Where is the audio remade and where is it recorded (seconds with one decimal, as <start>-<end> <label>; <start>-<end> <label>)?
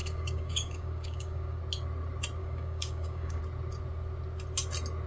0.0-1.6 remade; 1.6-2.4 recorded; 2.4-3.4 remade; 3.4-5.1 recorded